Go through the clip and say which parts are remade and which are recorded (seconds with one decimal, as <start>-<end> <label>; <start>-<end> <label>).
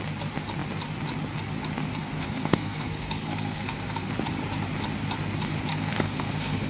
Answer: 0.0-2.0 recorded; 2.0-4.1 remade; 4.1-5.7 recorded; 5.7-6.7 remade